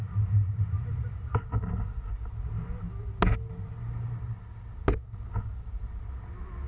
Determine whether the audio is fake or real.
real